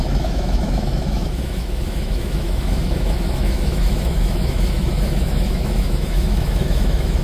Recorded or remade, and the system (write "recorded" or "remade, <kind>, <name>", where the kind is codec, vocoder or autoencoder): remade, autoencoder, DAC-VAE